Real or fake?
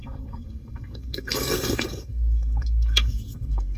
fake